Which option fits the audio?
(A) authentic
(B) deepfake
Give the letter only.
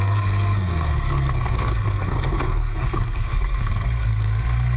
B